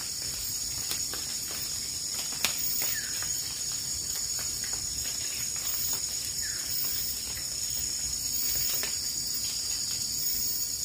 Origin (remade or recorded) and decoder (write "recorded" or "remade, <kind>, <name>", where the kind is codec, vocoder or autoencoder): remade, vocoder, BigVGAN v2